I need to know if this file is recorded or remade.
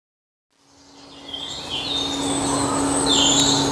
recorded